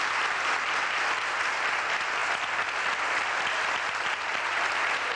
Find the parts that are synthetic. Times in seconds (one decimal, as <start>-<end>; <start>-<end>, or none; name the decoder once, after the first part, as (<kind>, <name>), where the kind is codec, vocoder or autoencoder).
none